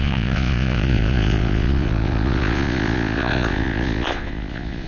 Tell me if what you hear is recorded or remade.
remade